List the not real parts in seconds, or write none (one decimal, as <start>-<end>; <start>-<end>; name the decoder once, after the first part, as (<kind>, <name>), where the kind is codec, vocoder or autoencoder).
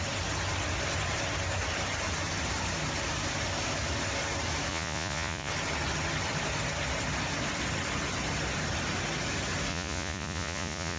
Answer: 4.7-5.5 (vocoder, Vocos); 9.7-11.0